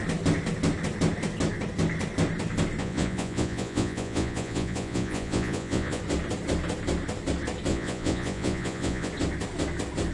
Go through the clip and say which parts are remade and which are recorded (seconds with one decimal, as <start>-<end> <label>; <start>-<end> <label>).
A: 0.0-2.8 recorded; 2.8-6.0 remade; 6.0-7.7 recorded; 7.7-9.1 remade; 9.1-10.1 recorded